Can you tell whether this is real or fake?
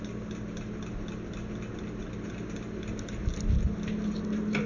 real